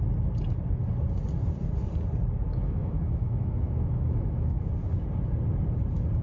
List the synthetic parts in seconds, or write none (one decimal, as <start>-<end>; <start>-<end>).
2.5-4.7